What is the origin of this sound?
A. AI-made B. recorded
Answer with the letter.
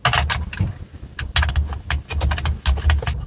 B